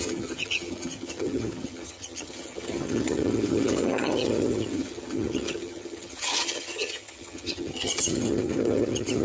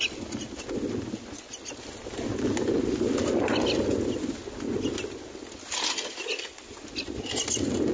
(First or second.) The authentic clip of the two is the second